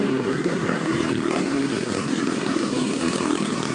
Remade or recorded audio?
remade